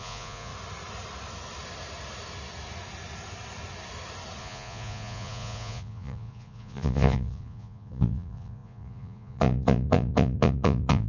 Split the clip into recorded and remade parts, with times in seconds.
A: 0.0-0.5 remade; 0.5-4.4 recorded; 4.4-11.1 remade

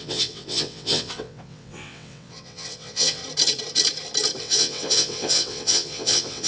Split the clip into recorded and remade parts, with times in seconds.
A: 0.0-3.2 remade; 3.2-4.4 recorded; 4.4-6.5 remade

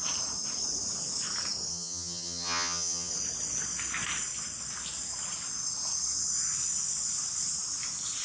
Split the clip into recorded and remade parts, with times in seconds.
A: 0.0-1.7 recorded; 1.7-3.1 remade; 3.1-8.2 recorded

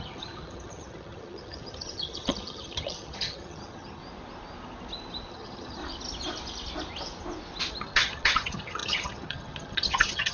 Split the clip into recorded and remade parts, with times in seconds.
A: 0.0-4.0 remade; 4.0-5.3 recorded; 5.3-5.8 remade; 5.8-7.8 recorded; 7.8-10.3 remade

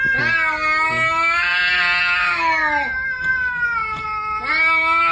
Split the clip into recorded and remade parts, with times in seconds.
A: 0.0-5.1 recorded

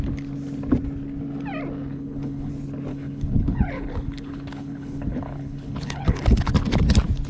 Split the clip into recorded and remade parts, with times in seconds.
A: 0.0-1.9 recorded; 1.9-2.5 remade; 2.5-2.9 recorded; 2.9-6.5 remade; 6.5-7.3 recorded

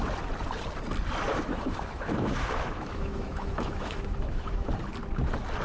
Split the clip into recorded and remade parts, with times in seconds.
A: 0.0-1.3 recorded; 1.3-4.7 remade; 4.7-5.6 recorded